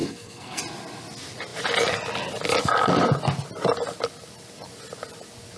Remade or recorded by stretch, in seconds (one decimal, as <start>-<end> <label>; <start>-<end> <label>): 0.0-0.6 remade; 0.6-5.6 recorded